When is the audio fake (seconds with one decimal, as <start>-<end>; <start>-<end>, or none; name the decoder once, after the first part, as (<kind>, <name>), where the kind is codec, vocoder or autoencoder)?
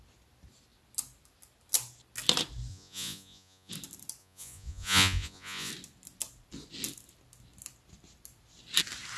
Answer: 2.7-3.7 (vocoder, Vocos); 4.2-5.7